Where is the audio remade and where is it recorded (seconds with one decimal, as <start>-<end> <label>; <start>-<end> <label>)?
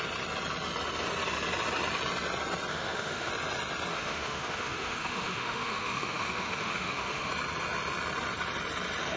0.0-2.7 recorded; 2.7-3.3 remade; 3.3-3.9 recorded; 3.9-7.3 remade; 7.3-9.2 recorded